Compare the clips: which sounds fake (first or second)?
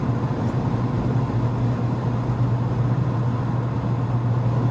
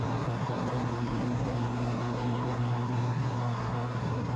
second